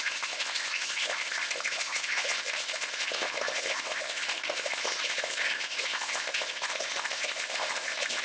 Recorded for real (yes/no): no